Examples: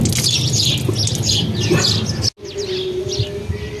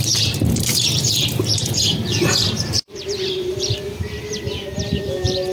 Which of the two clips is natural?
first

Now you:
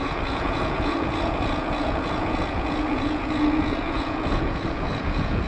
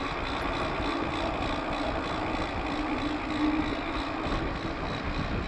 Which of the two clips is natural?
second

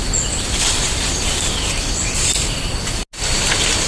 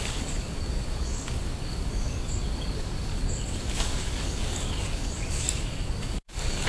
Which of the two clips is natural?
first